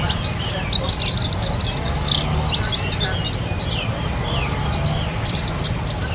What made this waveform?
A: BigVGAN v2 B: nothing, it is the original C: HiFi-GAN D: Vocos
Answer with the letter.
B